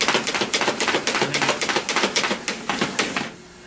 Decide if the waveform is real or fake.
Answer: real